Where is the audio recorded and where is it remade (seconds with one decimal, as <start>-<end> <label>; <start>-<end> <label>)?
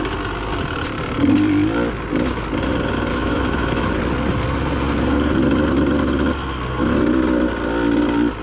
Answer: 0.0-3.1 recorded; 3.1-4.0 remade; 4.0-8.4 recorded